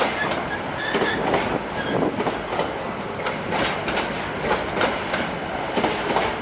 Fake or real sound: real